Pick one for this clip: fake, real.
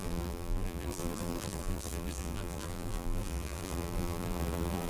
fake